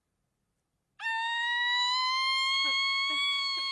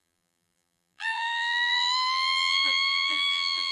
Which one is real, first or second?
first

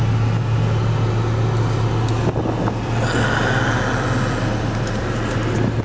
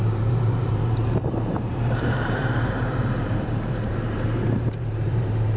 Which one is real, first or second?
first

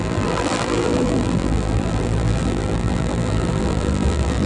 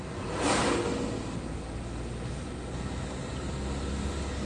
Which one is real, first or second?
second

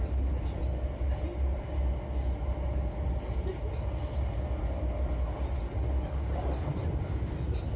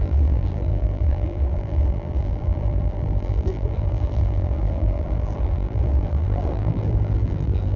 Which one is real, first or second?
first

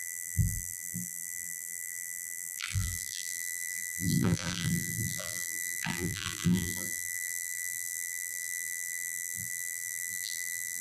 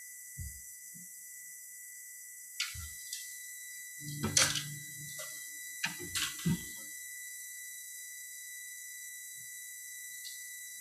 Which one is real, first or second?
second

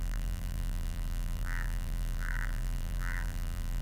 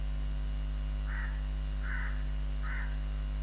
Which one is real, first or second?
second